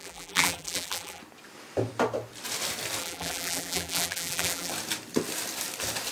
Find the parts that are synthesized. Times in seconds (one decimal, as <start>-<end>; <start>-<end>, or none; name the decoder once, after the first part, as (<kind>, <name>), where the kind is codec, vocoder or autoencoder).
0.0-1.2 (vocoder, BigVGAN v2); 3.0-4.7